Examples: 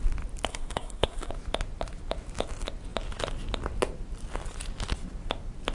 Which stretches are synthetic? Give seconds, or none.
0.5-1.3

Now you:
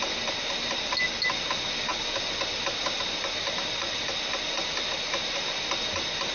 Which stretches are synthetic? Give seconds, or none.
none

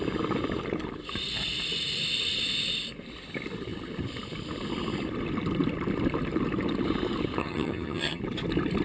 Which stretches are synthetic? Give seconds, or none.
7.4-8.2